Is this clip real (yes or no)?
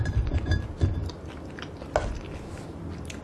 yes